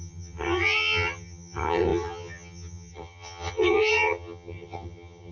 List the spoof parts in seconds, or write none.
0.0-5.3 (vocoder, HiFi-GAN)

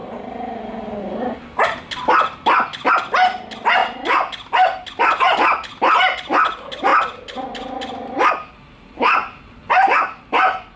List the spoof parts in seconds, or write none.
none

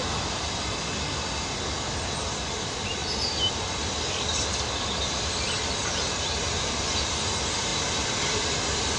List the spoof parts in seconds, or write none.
none